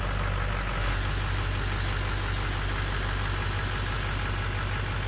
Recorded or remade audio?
recorded